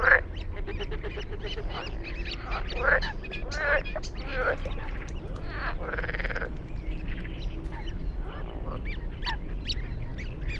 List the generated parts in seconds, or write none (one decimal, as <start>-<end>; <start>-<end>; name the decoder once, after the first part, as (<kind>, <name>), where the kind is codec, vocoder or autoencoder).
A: none

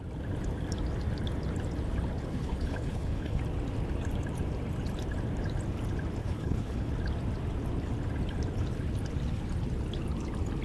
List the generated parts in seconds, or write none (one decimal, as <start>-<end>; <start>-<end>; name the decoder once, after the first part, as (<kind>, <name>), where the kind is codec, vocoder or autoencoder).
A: 2.3-3.4 (codec, HILCodec); 6.2-6.9

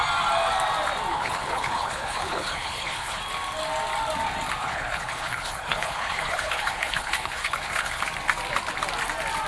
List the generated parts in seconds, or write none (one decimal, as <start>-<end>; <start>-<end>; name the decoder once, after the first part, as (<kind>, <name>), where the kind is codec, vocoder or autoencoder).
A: 1.1-3.2 (codec, HILCodec); 4.6-8.0

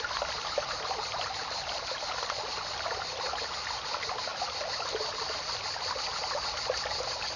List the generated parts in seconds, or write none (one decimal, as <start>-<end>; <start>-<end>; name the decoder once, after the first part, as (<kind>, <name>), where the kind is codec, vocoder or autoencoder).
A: none

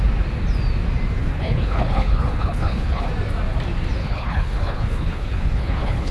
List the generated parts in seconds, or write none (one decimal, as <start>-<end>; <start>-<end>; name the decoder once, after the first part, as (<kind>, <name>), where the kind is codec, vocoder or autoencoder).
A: 1.2-3.1 (codec, HILCodec); 4.0-6.1